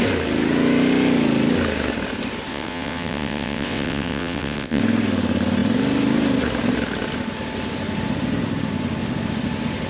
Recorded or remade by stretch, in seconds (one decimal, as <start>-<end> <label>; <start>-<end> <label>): 0.0-2.5 recorded; 2.5-4.8 remade; 4.8-9.9 recorded